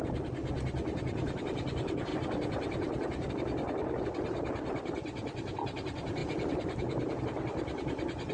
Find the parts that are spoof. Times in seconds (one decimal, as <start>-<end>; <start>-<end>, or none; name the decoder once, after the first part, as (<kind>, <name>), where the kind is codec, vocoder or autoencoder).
none